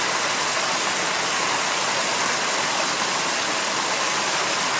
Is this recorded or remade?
recorded